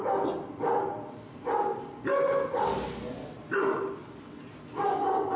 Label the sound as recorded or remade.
recorded